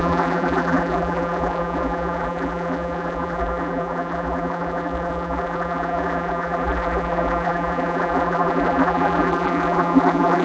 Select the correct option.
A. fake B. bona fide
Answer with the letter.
A